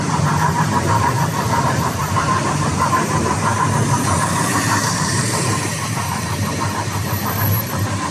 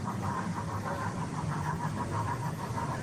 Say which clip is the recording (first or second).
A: second